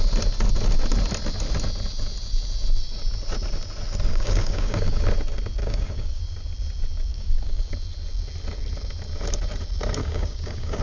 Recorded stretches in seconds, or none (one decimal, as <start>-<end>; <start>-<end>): 0.0-4.1; 5.0-5.6; 6.2-7.1; 7.7-10.0